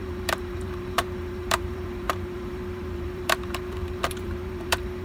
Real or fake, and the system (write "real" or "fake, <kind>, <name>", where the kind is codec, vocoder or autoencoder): fake, vocoder, BigVGAN v2